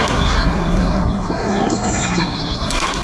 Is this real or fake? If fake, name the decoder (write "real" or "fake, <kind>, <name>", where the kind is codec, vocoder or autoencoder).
fake, codec, SNAC